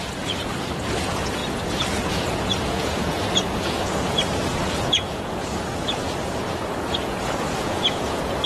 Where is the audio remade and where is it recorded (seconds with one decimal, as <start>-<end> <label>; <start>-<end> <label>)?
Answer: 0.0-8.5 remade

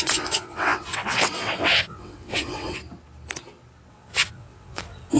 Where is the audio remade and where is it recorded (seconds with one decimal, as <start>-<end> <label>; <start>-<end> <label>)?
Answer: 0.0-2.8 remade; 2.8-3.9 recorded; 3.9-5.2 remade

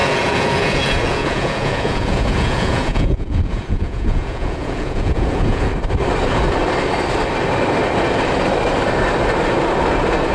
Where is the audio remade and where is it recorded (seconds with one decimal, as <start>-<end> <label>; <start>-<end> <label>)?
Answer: 0.0-5.7 remade; 5.7-10.3 recorded